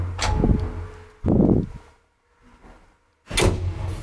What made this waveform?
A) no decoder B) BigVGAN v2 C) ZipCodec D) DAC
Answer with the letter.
A